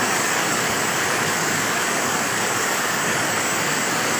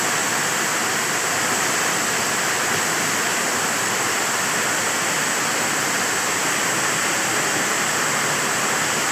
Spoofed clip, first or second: first